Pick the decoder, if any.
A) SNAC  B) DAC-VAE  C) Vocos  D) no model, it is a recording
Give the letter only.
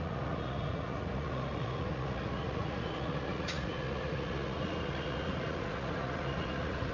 C